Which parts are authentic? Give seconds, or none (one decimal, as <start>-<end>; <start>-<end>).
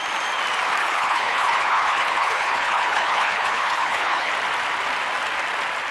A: 0.0-0.8; 4.3-5.9